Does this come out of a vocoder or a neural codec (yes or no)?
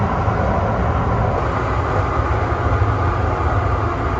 no